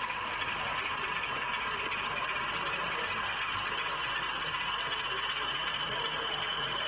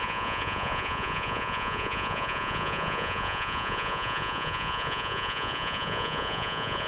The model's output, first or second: second